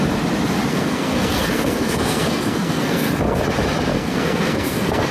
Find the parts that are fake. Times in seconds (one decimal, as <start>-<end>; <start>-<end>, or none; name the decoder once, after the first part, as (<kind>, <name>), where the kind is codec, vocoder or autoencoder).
0.7-3.4 (codec, SNAC); 3.9-5.1